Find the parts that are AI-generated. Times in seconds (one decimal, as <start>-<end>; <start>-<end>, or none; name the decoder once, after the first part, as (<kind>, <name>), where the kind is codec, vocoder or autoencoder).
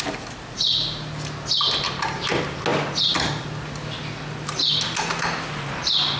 none